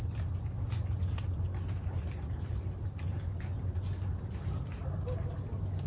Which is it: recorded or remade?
recorded